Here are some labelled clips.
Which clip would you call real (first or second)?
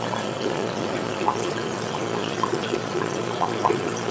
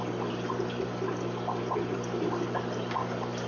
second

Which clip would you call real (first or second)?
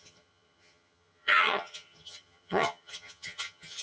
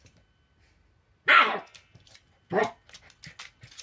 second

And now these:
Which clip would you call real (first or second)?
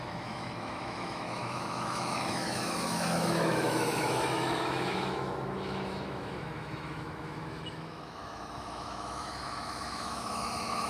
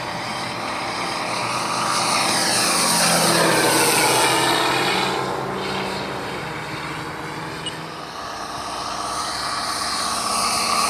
second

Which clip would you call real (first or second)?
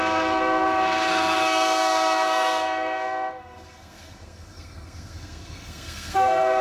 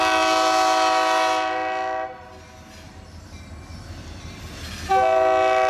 second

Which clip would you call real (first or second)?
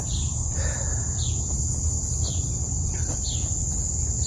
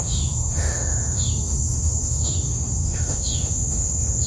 first